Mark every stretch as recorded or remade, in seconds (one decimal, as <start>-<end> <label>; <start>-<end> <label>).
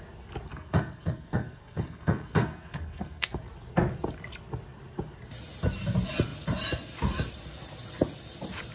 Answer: 0.0-0.5 recorded; 0.5-3.4 remade; 3.4-8.7 recorded